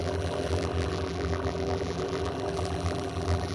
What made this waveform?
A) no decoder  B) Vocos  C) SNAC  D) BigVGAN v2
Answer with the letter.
D